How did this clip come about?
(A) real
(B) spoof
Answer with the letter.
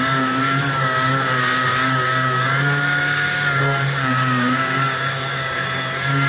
B